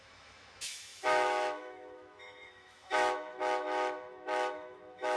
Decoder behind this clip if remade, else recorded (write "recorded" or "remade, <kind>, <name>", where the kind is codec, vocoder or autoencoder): remade, autoencoder, DAC-VAE